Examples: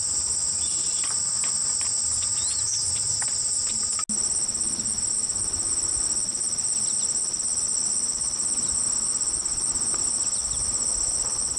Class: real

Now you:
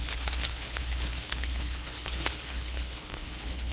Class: fake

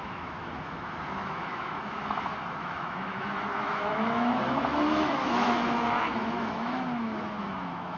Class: fake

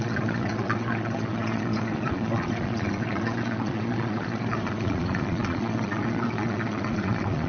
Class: fake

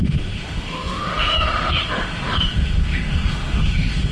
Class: fake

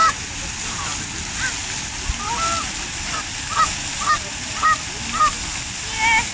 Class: real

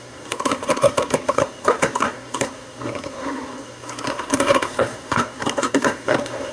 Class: fake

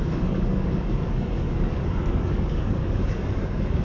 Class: fake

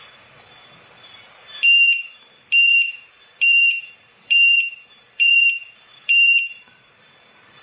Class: fake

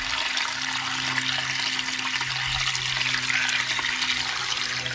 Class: real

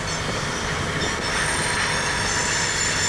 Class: real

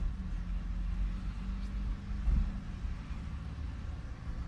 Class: real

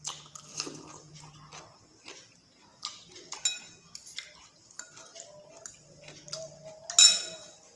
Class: real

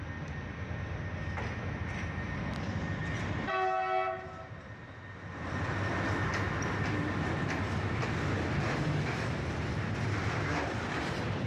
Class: real